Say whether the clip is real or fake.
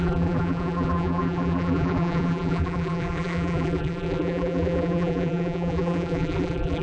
fake